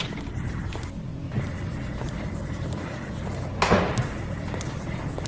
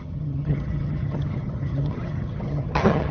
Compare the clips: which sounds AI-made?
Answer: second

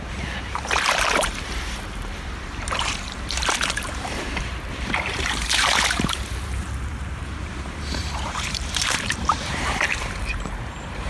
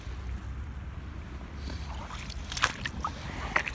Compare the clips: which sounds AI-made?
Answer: first